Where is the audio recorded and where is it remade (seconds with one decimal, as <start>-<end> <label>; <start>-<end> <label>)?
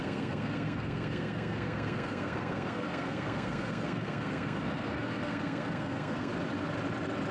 0.0-6.3 remade; 6.3-7.3 recorded